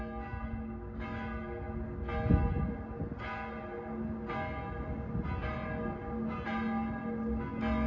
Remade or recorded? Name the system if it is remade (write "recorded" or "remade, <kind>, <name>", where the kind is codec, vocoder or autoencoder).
recorded